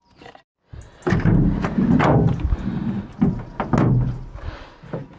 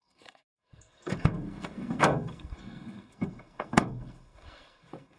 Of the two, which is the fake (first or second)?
second